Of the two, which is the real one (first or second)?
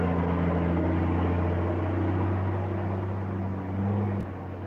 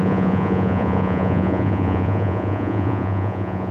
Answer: first